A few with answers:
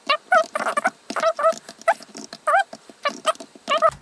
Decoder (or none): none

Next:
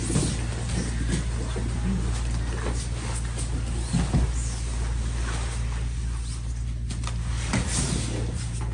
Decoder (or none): none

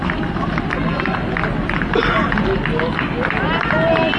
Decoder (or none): none